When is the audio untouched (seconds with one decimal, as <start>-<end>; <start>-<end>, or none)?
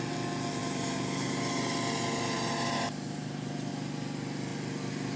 0.0-0.6; 3.7-5.2